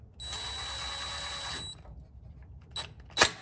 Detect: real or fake real